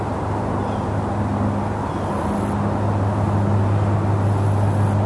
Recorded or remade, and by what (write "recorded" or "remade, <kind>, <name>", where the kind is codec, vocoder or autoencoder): recorded